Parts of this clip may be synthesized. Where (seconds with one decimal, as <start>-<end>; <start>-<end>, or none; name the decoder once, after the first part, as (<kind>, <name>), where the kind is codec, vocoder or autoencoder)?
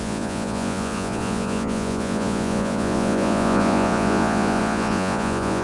0.0-5.6 (vocoder, Vocos)